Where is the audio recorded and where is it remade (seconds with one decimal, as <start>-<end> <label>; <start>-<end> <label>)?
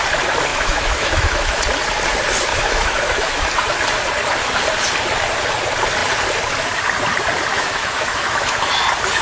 0.0-0.5 recorded; 0.5-1.6 remade; 1.6-2.5 recorded; 2.5-3.4 remade; 3.4-7.5 recorded; 7.5-8.7 remade; 8.7-9.2 recorded